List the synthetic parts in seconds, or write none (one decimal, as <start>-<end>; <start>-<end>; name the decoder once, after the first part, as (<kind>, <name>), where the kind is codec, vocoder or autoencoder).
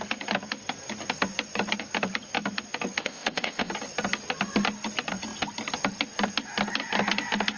3.0-3.7 (codec, ZipCodec)